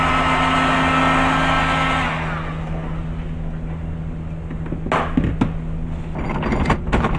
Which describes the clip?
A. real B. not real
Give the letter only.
A